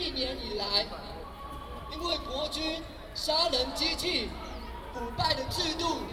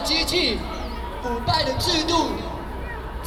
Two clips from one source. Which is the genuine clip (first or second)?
second